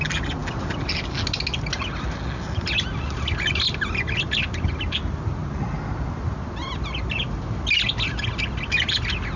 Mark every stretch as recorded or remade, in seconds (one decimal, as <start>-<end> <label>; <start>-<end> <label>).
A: 0.0-9.4 recorded